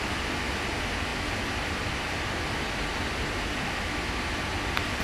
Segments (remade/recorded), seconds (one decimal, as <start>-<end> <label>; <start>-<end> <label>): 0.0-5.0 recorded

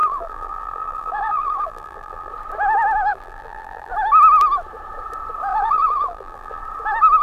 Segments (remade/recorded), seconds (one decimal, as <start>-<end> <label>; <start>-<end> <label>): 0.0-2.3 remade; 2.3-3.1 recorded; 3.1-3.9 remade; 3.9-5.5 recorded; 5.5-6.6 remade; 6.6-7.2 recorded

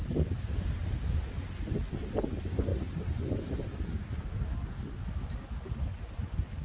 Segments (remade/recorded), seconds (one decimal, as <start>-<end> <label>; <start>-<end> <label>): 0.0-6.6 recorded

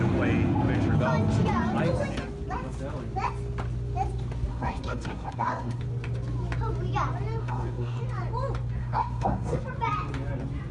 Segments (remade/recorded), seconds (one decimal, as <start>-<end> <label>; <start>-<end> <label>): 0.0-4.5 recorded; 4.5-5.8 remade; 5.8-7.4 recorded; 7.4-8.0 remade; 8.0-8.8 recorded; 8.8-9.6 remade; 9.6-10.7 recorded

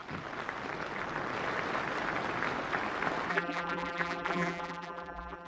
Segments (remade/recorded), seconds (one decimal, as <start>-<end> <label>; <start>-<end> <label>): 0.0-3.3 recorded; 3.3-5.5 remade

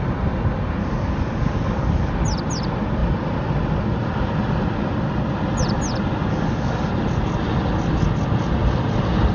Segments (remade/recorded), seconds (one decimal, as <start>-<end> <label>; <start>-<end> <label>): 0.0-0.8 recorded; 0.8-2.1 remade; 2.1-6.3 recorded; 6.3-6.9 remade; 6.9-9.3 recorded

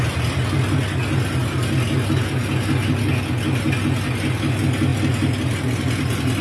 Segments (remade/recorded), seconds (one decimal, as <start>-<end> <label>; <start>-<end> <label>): 0.0-6.4 recorded